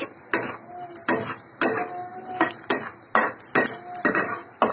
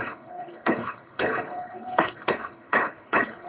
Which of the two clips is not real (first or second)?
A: second